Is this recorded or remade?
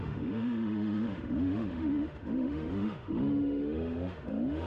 remade